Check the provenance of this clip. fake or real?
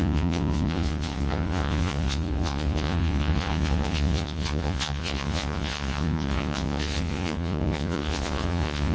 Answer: fake